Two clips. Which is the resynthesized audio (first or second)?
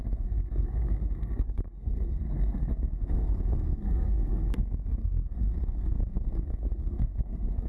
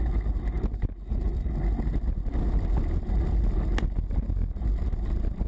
first